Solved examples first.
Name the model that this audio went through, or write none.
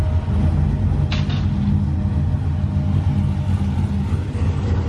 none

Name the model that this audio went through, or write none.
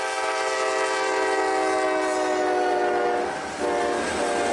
none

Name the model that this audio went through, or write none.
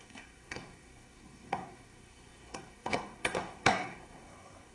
codec, SNAC